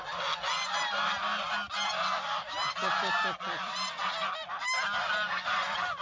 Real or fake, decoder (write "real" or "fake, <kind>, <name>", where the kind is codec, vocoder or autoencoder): real